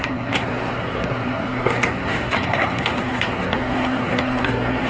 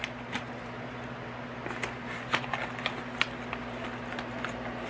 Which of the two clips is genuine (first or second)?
second